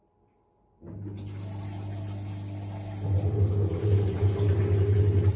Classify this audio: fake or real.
real